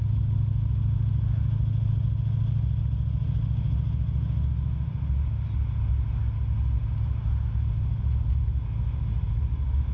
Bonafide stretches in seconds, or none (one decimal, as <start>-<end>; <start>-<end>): 0.0-9.9